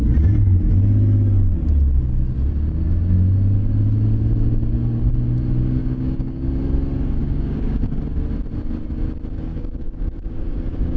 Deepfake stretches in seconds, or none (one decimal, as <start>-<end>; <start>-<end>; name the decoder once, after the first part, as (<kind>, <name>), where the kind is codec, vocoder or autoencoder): 5.8-6.5 (codec, DAC); 7.2-8.0; 9.5-11.0